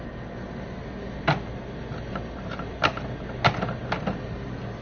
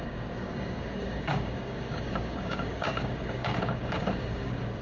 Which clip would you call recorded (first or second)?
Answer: first